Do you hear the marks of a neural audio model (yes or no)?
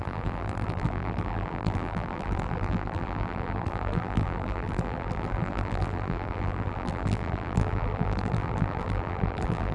yes